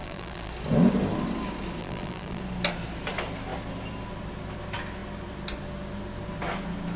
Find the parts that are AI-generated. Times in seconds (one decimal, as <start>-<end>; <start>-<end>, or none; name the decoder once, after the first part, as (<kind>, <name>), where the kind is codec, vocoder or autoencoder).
0.0-0.5 (vocoder, BigVGAN v2); 1.8-2.4